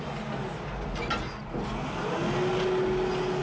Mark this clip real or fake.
real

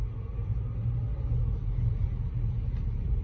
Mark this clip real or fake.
real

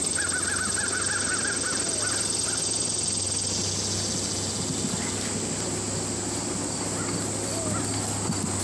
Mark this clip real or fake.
real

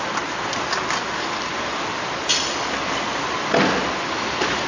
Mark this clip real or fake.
real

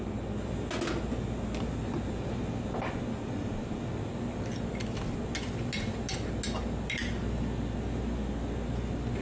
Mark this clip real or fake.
real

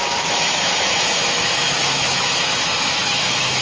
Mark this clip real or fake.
fake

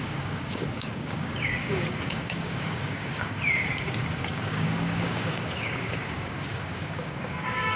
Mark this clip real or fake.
fake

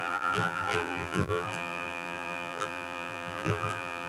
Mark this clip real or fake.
fake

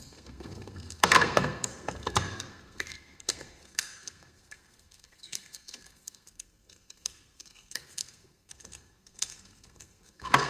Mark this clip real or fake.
fake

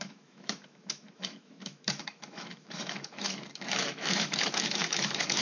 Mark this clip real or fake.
fake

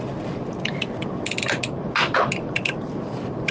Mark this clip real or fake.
real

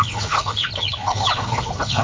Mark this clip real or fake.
fake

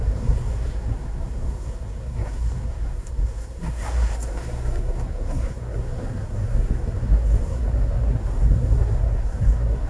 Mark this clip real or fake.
fake